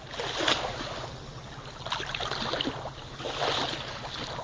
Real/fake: real